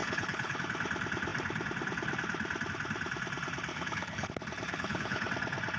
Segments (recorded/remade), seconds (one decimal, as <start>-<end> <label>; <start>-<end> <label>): 0.0-0.6 remade; 0.6-3.7 recorded; 3.7-4.3 remade; 4.3-4.7 recorded; 4.7-5.3 remade; 5.3-5.8 recorded